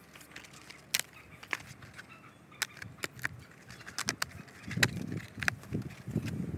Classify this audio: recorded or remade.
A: recorded